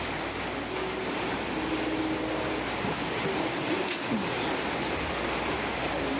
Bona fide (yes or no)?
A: yes